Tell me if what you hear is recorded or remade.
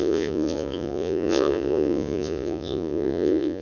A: remade